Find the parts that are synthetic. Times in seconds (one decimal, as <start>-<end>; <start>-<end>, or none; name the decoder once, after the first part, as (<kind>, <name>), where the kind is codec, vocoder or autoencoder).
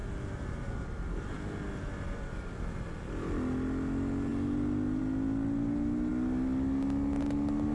none